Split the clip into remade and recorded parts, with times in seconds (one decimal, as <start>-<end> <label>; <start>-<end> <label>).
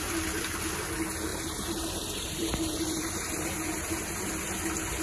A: 0.0-1.3 recorded; 1.3-4.3 remade; 4.3-5.0 recorded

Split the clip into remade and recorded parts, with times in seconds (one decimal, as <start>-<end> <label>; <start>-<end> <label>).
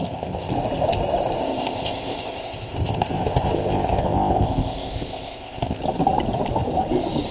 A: 0.0-0.5 remade; 0.5-1.4 recorded; 1.4-5.8 remade; 5.8-7.3 recorded